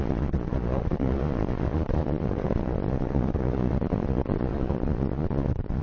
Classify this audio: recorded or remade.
remade